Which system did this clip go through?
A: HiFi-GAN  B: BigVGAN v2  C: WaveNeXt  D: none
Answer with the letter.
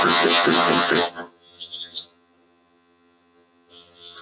A